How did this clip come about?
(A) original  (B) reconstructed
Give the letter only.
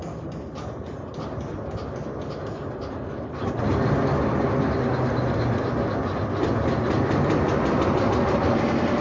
A